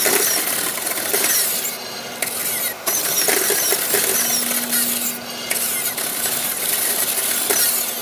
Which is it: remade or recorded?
recorded